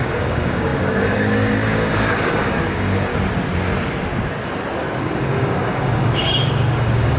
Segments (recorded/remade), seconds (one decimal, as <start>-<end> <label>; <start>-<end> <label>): 0.0-3.1 remade; 3.1-5.0 recorded; 5.0-7.2 remade